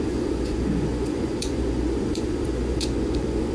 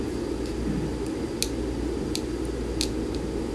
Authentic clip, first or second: second